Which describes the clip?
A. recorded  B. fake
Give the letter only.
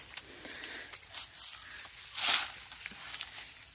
A